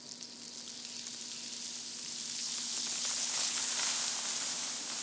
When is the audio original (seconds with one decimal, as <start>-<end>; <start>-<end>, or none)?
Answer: 0.0-2.4; 3.7-5.0